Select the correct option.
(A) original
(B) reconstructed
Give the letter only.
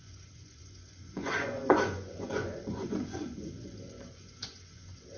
B